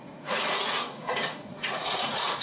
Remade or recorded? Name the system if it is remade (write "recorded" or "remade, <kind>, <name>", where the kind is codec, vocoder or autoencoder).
remade, vocoder, Vocos